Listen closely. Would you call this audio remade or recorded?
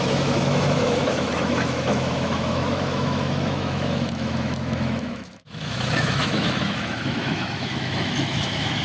remade